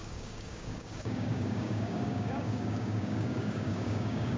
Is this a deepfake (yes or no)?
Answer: yes